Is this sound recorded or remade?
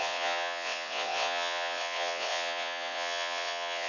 remade